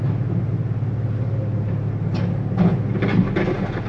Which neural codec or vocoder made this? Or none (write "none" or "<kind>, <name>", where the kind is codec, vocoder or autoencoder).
none